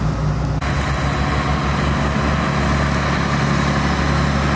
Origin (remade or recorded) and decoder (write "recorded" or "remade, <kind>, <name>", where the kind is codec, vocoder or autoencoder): recorded